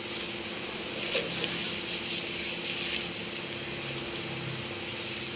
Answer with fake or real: real